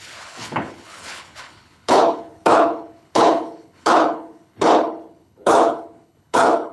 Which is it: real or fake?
fake